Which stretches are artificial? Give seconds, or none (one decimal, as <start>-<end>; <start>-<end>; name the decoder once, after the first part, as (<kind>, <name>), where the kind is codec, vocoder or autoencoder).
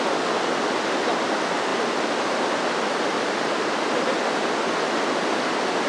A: none